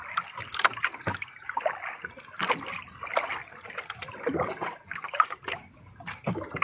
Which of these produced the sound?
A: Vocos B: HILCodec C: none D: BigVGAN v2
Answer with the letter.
C